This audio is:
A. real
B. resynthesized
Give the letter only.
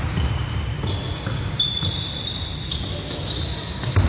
A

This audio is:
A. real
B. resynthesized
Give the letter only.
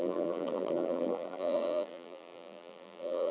B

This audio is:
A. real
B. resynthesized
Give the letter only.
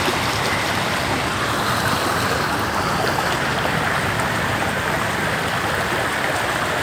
A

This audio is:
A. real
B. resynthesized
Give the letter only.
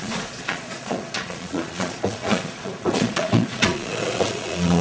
B